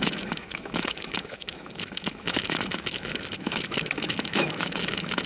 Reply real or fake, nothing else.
fake